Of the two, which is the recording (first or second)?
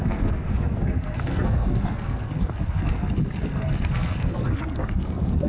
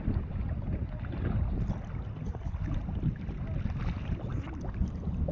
second